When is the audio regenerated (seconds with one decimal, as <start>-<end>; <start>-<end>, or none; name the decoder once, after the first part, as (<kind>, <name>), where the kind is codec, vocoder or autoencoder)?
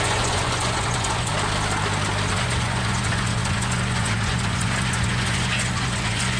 0.0-1.3 (vocoder, Vocos); 2.3-6.4